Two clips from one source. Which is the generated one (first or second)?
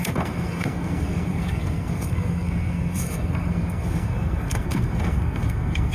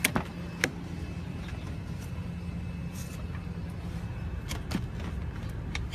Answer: first